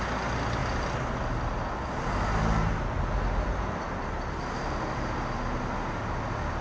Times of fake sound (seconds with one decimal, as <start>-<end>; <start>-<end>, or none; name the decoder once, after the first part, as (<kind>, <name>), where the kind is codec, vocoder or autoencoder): none